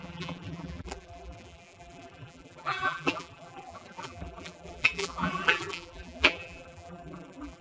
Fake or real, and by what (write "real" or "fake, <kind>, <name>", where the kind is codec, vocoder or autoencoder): fake, vocoder, BigVGAN v2